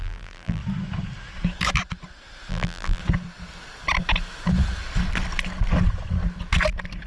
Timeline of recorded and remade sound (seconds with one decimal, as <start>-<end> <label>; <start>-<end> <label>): 0.0-0.6 remade; 0.6-2.5 recorded; 2.5-3.0 remade; 3.0-7.1 recorded